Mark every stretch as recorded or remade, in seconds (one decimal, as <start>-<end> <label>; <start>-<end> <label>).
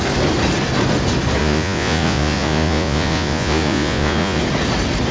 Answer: 0.0-1.4 recorded; 1.4-4.4 remade; 4.4-5.1 recorded